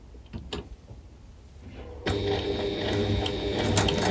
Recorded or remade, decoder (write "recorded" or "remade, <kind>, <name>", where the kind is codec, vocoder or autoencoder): recorded